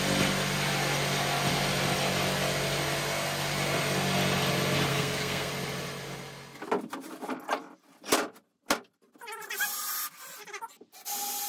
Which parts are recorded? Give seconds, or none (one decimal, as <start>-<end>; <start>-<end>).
0.0-4.9; 5.5-11.5